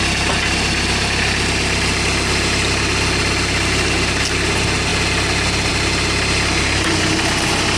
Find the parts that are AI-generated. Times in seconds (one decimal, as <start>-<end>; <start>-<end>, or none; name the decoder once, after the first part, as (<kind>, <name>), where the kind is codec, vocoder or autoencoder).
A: none